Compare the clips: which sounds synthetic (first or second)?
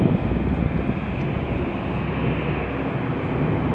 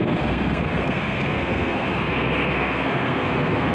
second